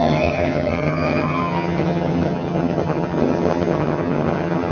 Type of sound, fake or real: fake